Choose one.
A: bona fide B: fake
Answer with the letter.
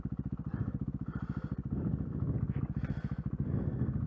A